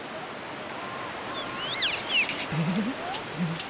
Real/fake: real